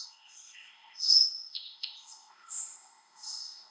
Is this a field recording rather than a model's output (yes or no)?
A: no